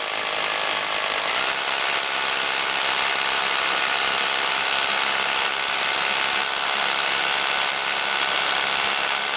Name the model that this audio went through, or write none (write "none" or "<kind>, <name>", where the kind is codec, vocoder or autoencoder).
none